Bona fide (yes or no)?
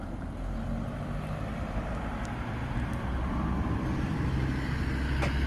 yes